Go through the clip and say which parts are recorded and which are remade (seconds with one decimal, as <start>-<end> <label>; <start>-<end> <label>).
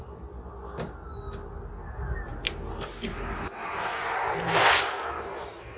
0.0-5.8 recorded